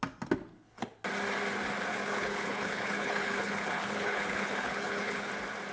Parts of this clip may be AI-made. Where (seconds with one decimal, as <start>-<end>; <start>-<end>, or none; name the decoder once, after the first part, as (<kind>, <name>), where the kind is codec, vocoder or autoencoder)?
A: 0.5-1.0 (codec, HILCodec); 1.9-5.3